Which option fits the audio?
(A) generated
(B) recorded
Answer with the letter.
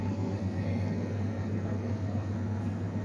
A